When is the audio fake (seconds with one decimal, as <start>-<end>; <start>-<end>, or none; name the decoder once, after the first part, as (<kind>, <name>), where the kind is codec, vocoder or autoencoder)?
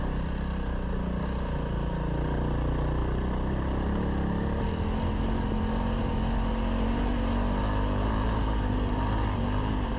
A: none